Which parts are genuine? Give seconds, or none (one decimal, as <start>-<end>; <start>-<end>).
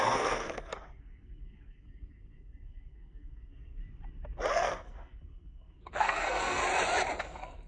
3.8-4.5; 6.6-7.2